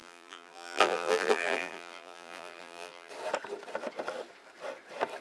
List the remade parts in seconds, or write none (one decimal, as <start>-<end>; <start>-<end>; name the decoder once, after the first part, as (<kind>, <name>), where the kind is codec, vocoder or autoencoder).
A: 0.0-3.1 (vocoder, BigVGAN v2)